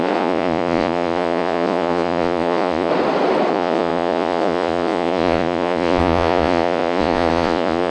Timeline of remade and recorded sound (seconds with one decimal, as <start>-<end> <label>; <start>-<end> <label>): 0.0-2.9 remade; 2.9-3.5 recorded; 3.5-7.9 remade